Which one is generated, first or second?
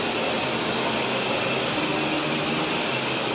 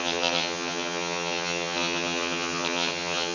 second